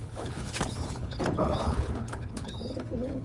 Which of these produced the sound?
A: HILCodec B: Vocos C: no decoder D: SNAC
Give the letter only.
A